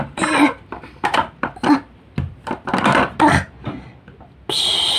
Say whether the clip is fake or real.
real